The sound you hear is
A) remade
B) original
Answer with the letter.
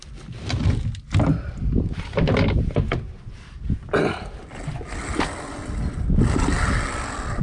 B